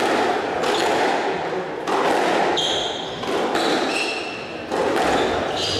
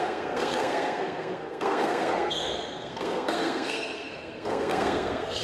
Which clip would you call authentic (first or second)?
first